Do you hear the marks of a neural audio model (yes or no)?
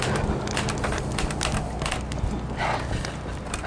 no